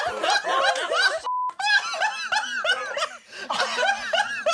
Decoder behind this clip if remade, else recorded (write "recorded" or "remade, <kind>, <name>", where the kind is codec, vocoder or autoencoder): recorded